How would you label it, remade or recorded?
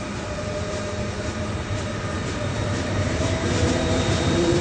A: remade